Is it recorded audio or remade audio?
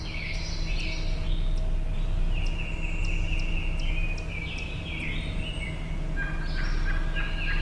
recorded